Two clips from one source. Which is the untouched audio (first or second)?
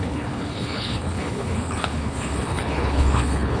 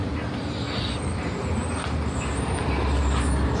second